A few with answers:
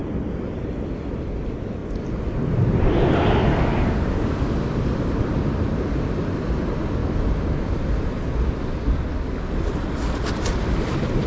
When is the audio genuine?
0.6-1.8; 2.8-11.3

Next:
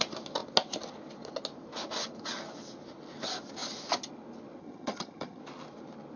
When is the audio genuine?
0.0-4.6; 5.4-6.2